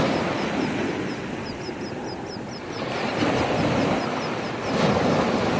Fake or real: fake